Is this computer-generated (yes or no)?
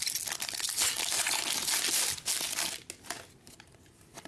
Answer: no